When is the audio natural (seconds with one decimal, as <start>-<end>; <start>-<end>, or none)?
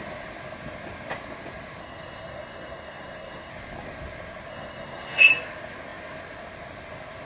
0.0-1.8; 3.5-4.5; 5.3-7.2